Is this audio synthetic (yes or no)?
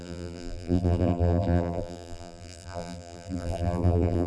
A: yes